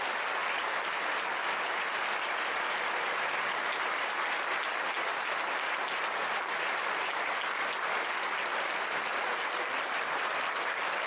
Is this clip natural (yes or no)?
yes